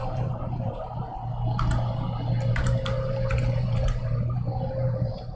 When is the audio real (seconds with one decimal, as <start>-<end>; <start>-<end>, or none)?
1.1-2.5